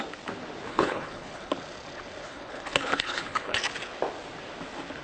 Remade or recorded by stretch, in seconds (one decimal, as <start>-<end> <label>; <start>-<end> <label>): 0.0-0.7 recorded; 0.7-1.5 remade; 1.5-2.2 recorded; 2.2-3.6 remade; 3.6-5.0 recorded